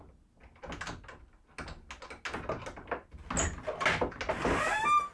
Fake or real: real